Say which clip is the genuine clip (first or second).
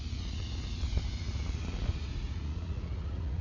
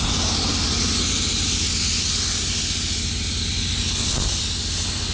second